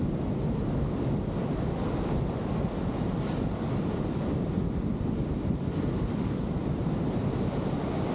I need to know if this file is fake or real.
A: real